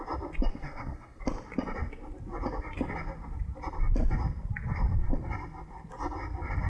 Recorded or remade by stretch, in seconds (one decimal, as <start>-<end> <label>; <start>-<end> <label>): 0.0-0.6 recorded; 0.6-1.2 remade; 1.2-6.7 recorded